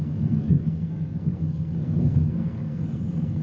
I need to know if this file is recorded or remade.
remade